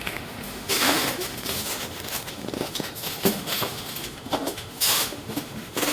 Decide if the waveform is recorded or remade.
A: remade